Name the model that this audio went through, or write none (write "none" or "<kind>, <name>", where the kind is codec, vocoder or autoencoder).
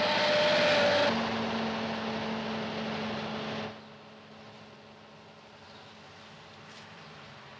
none